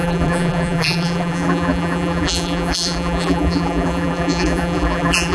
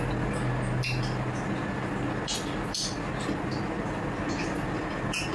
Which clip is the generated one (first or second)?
first